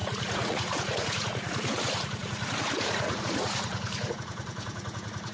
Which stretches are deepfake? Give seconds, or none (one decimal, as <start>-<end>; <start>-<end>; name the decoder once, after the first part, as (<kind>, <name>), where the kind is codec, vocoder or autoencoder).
0.0-5.3 (vocoder, Vocos)